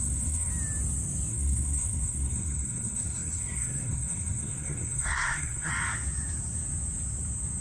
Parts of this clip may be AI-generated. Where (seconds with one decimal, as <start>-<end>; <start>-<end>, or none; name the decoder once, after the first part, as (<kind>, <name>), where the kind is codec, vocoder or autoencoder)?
0.0-0.5 (codec, SNAC); 1.3-5.7